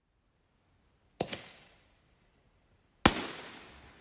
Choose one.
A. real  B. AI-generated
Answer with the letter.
A